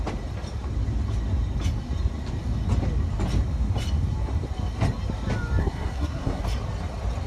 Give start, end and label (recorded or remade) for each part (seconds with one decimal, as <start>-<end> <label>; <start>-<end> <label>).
0.0-5.6 recorded; 5.6-6.4 remade; 6.4-7.3 recorded